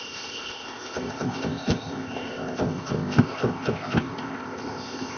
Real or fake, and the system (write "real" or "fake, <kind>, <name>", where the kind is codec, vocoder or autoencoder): fake, codec, ZipCodec